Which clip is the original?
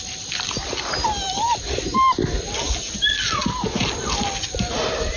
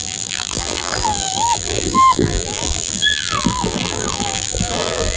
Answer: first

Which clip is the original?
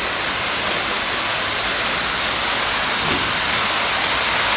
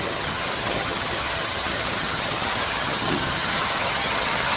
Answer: first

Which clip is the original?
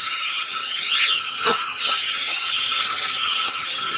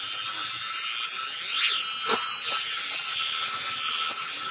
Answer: second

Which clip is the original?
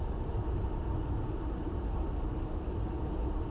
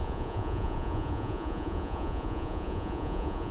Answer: first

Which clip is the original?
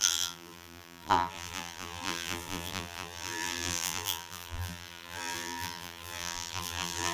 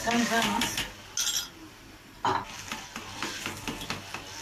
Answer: second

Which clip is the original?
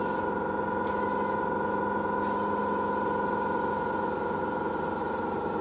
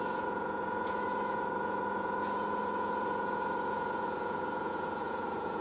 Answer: first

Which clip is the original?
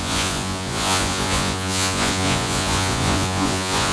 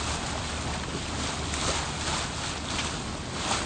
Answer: second